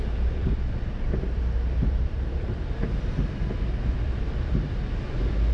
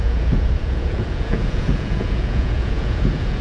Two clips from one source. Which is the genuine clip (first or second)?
first